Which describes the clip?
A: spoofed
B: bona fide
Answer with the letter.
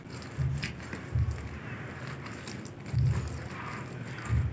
B